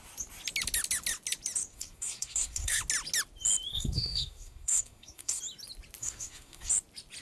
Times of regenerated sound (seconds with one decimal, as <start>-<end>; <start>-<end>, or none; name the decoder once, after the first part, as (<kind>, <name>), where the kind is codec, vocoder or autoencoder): 1.7-2.8 (codec, SNAC); 3.7-5.4; 6.0-6.7